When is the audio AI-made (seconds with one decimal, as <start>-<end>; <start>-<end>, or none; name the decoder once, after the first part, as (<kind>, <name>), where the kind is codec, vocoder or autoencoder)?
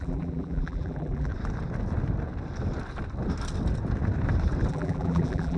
0.0-1.3 (vocoder, BigVGAN v2); 4.7-5.6